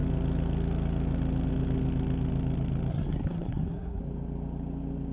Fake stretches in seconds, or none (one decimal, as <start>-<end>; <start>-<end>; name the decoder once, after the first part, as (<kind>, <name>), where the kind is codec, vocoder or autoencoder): 2.9-4.0 (codec, SNAC)